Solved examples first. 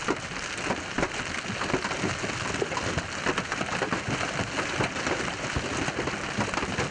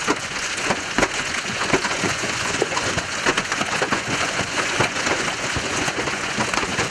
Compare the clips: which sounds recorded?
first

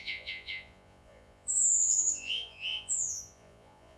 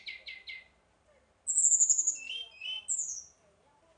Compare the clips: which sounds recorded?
second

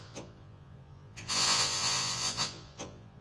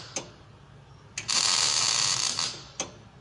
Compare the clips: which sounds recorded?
second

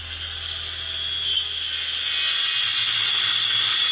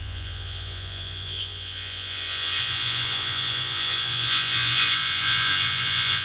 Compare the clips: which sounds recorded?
first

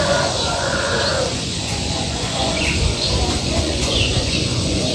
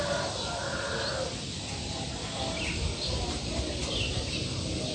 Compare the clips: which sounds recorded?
second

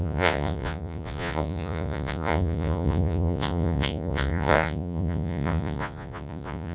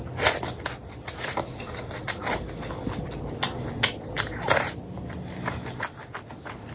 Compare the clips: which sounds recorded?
second